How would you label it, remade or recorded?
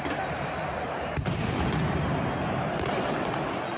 recorded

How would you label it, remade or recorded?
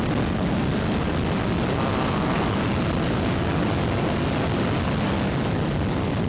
recorded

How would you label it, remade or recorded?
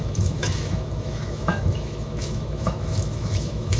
remade